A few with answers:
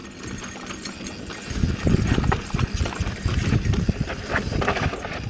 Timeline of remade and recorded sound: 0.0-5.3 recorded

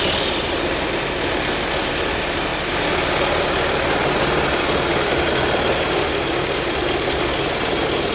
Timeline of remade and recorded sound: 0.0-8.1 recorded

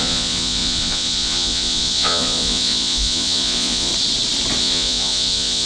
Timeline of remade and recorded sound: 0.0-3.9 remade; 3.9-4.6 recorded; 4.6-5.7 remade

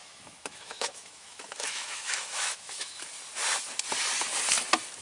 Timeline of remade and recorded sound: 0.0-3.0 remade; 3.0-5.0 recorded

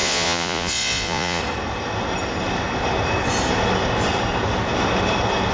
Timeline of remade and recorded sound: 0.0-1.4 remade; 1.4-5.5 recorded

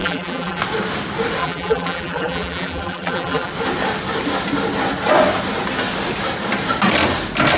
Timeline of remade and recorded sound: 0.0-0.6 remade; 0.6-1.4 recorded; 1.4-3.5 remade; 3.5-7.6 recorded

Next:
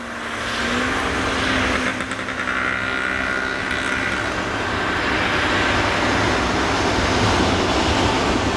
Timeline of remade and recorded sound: 0.0-8.6 recorded